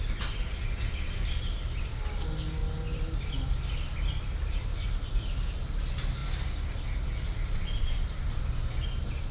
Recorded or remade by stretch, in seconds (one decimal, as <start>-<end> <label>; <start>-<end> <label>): 0.0-9.3 recorded